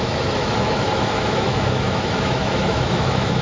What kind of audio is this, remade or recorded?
remade